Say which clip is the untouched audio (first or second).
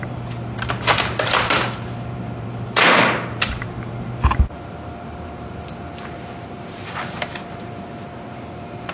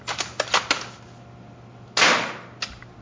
second